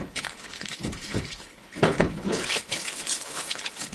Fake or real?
fake